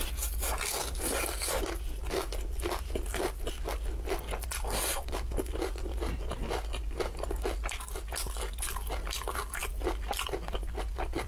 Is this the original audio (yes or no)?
yes